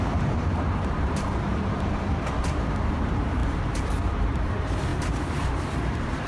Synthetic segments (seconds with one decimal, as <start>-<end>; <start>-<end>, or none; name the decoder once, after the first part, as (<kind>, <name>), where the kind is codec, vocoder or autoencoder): 0.0-6.3 (vocoder, BigVGAN v2)